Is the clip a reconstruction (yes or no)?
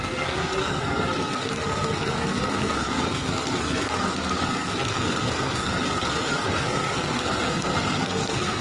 yes